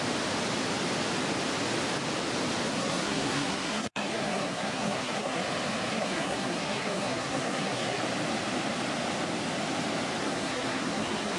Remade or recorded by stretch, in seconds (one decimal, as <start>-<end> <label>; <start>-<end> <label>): 0.0-2.7 recorded; 2.7-5.4 remade; 5.4-5.9 recorded; 5.9-8.0 remade; 8.0-10.2 recorded; 10.2-11.4 remade